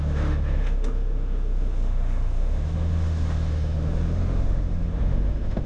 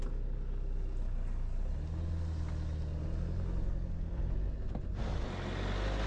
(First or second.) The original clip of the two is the second